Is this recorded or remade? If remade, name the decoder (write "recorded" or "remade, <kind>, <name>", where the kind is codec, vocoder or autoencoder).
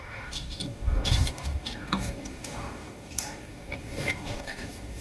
remade, codec, DAC